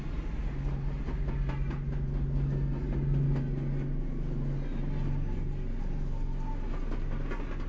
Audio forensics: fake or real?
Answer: real